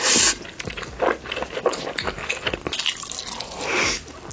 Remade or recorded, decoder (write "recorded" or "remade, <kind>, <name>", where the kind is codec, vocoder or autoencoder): recorded